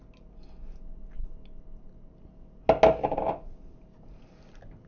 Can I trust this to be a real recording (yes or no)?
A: yes